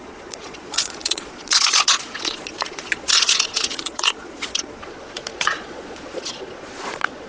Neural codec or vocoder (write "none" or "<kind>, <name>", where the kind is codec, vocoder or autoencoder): vocoder, Vocos